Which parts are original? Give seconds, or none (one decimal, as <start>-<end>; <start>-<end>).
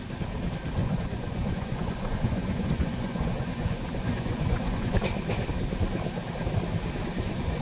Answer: 0.0-0.8; 4.9-7.6